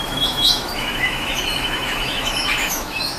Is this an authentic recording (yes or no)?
no